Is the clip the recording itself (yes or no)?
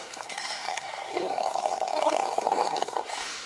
no